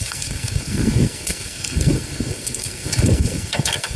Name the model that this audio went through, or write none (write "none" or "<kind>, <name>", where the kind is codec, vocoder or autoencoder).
codec, SNAC